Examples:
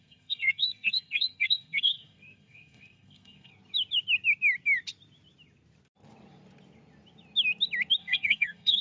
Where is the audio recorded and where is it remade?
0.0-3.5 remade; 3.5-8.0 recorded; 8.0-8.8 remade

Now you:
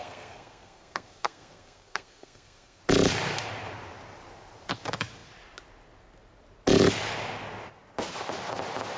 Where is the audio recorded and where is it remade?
0.0-2.8 remade; 2.8-9.0 recorded

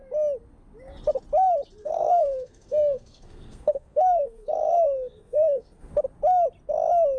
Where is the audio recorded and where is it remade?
0.0-1.8 recorded; 1.8-5.9 remade; 5.9-7.2 recorded

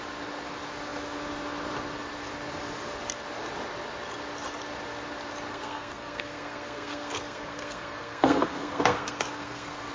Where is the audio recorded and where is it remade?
0.0-5.5 recorded; 5.5-9.9 remade

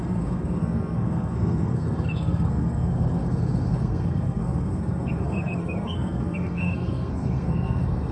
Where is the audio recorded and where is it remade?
0.0-8.1 remade

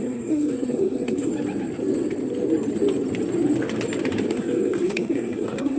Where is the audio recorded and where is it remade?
0.0-1.3 remade; 1.3-4.3 recorded; 4.3-5.8 remade

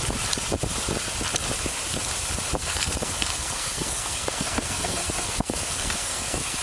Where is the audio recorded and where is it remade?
0.0-2.6 recorded; 2.6-6.6 remade